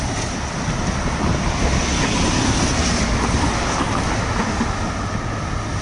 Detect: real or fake real